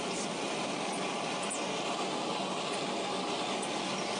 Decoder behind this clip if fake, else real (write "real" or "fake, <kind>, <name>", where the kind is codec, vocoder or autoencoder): real